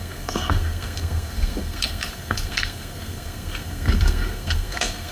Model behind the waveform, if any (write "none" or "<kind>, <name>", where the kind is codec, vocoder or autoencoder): codec, SNAC